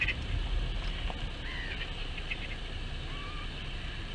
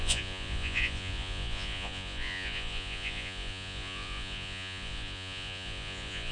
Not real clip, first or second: second